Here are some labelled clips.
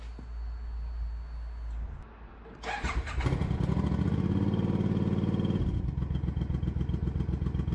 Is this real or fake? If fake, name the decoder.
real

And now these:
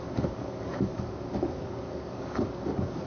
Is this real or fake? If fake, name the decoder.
fake, codec, DAC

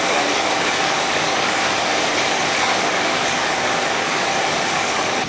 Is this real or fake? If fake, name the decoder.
fake, codec, DAC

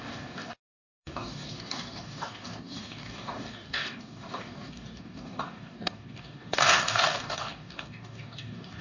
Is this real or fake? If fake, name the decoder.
fake, codec, DAC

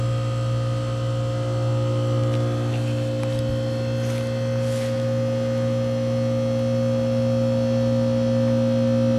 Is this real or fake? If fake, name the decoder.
real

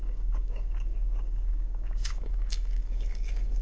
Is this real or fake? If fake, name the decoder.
fake, codec, DAC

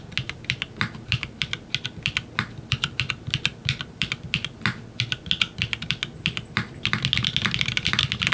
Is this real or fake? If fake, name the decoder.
real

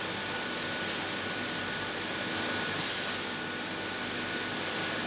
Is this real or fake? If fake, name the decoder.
real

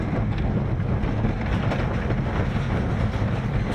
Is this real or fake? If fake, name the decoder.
real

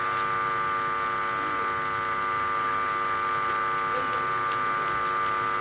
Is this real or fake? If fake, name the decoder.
real